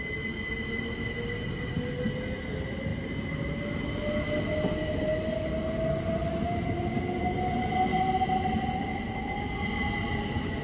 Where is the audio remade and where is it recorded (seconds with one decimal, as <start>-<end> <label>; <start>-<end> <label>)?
0.0-10.6 recorded